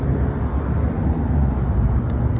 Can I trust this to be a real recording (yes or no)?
yes